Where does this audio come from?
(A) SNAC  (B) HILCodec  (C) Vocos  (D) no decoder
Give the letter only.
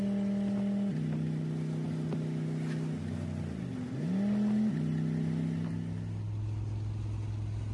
D